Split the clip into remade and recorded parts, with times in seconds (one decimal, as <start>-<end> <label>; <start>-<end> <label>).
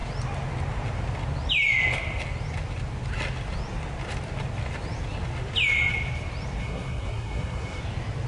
0.0-6.6 recorded; 6.6-7.8 remade; 7.8-8.3 recorded